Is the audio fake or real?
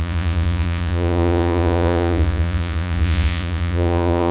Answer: fake